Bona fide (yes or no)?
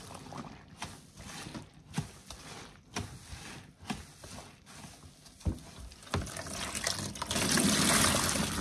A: yes